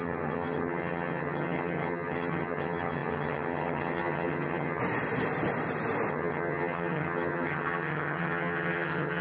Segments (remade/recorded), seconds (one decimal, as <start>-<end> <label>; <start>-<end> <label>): 0.0-4.8 remade; 4.8-6.1 recorded; 6.1-9.2 remade